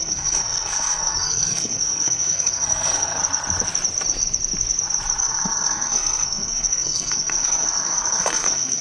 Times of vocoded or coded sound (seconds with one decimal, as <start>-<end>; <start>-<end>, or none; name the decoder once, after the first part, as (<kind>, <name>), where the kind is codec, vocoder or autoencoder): 0.0-3.2 (codec, SNAC); 5.2-8.8